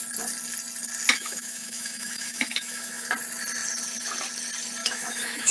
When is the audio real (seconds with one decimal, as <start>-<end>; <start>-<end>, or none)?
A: 0.0-1.1; 3.1-4.8